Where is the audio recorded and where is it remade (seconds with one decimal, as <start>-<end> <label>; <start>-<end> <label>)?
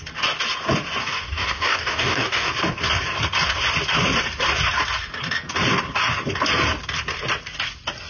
0.0-1.0 recorded; 1.0-2.5 remade; 2.5-8.1 recorded